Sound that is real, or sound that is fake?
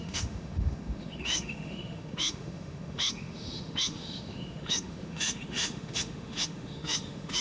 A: fake